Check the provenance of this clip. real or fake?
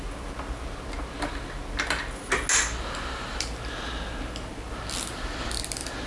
real